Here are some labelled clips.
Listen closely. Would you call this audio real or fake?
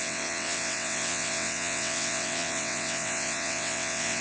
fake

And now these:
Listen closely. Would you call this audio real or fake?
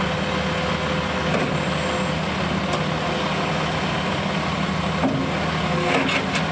real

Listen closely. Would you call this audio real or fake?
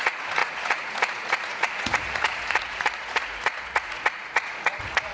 fake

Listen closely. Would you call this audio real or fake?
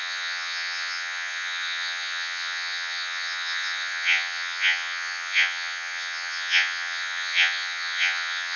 fake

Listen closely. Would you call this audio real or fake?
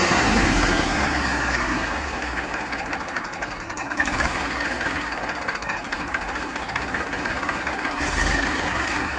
fake